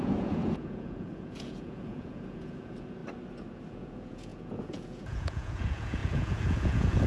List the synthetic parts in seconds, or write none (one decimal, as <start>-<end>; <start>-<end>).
0.0-3.0; 3.7-7.1